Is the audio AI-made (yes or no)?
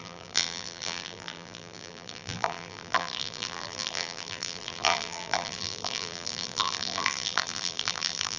yes